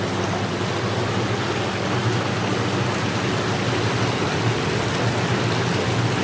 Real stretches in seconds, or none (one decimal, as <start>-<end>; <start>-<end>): 0.0-6.2